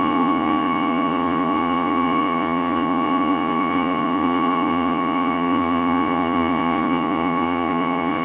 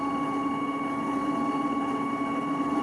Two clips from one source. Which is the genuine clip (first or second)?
second